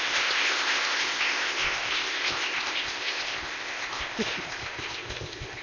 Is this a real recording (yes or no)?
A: no